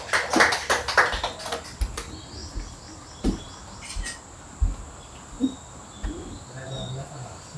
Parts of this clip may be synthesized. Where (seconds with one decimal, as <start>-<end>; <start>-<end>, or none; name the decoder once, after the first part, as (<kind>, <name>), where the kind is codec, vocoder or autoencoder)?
2.4-3.5 (vocoder, BigVGAN v2)